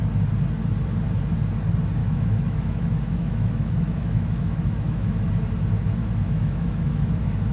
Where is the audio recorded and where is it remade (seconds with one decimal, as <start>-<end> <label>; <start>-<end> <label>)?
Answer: 0.0-2.0 recorded; 2.0-5.3 remade; 5.3-6.0 recorded; 6.0-7.5 remade